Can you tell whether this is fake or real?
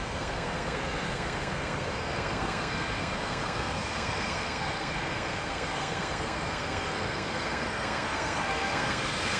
fake